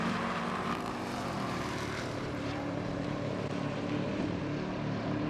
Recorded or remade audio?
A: remade